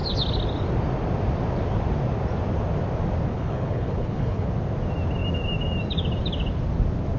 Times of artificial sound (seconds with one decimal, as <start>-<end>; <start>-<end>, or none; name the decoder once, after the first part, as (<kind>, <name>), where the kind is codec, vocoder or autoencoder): 3.3-4.5 (codec, HILCodec)